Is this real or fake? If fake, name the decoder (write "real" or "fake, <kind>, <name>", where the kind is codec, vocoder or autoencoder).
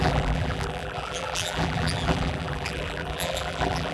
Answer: fake, vocoder, BigVGAN v2